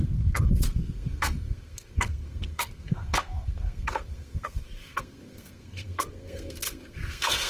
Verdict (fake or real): fake